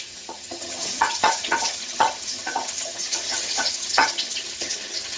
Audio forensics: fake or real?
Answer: fake